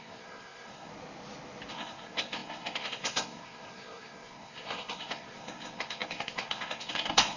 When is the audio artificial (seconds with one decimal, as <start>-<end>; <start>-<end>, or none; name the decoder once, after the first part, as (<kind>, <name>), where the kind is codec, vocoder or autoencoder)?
0.0-0.9 (codec, SNAC); 1.7-7.4